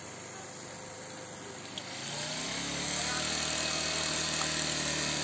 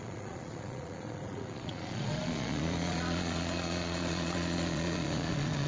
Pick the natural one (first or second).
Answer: first